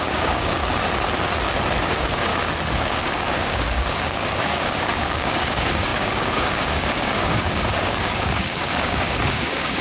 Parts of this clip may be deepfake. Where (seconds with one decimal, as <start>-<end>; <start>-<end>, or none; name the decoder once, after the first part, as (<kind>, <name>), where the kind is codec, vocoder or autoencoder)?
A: 0.0-0.6 (codec, DAC); 1.8-2.3; 2.8-9.8